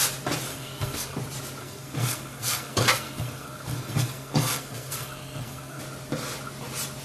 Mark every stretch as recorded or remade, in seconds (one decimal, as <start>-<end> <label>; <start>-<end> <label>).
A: 0.0-0.5 recorded; 0.5-1.2 remade; 1.2-1.6 recorded; 1.6-5.8 remade; 5.8-7.0 recorded